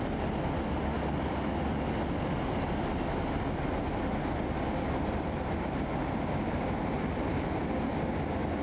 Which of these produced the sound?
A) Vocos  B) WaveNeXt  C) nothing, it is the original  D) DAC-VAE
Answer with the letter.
C